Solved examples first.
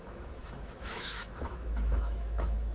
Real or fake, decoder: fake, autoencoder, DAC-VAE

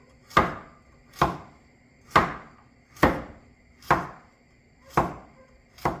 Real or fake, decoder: real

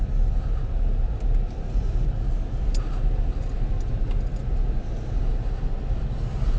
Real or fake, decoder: real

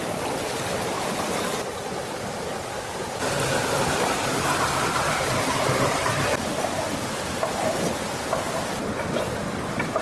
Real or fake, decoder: real